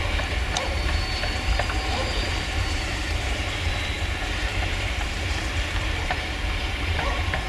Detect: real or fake fake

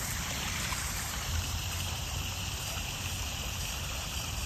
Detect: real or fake fake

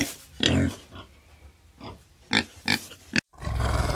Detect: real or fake real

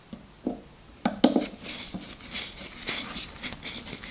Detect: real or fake real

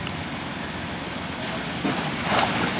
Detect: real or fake fake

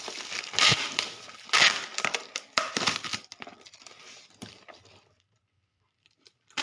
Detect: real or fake fake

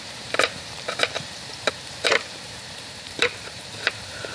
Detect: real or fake fake